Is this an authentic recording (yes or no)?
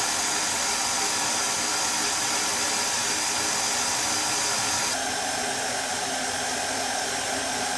yes